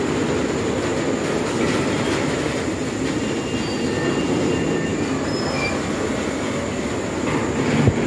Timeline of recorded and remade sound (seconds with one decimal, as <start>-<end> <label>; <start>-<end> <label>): 0.0-8.1 recorded